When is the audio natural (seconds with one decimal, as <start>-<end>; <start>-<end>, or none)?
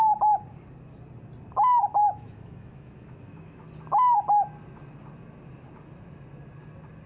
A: 0.0-2.0; 3.7-7.1